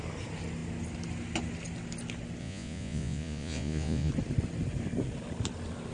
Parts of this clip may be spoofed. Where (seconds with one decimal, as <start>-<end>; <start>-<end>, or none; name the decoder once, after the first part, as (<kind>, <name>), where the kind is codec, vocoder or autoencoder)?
2.4-4.1 (vocoder, Vocos)